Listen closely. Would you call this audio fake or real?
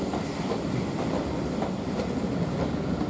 real